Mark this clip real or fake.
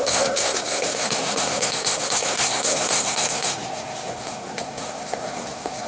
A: fake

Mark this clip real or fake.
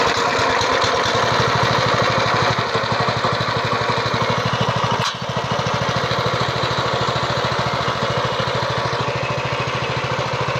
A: real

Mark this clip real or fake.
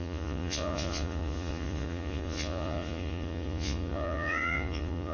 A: fake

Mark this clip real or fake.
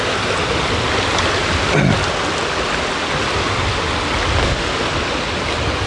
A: real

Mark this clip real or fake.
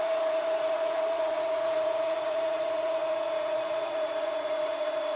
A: fake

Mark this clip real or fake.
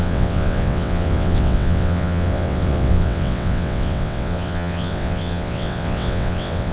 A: fake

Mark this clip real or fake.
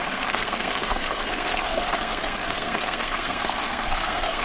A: fake